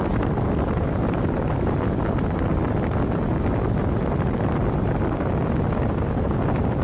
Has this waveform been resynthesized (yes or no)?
no